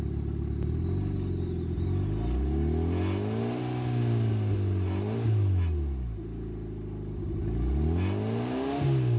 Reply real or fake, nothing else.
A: real